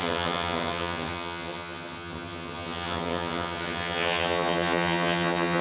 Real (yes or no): no